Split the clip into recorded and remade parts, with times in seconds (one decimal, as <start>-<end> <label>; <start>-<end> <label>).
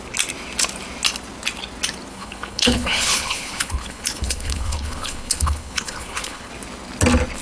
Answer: 0.0-2.1 recorded; 2.1-6.5 remade; 6.5-7.4 recorded